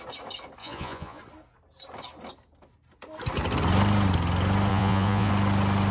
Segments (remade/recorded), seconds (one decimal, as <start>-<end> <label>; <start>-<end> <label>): 0.0-0.6 recorded; 0.6-1.2 remade; 1.2-4.7 recorded; 4.7-5.3 remade; 5.3-5.9 recorded